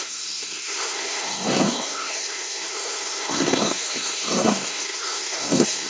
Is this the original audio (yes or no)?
no